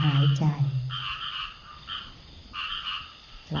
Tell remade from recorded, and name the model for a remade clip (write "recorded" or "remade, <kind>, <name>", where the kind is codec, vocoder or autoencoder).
recorded